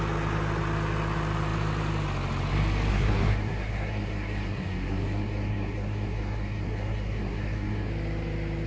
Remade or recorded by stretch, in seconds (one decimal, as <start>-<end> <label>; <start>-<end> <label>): 0.0-2.9 recorded; 2.9-7.9 remade; 7.9-8.7 recorded